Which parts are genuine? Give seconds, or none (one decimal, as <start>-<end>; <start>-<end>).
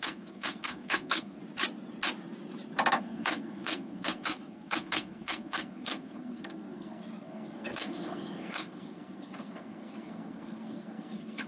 1.4-2.9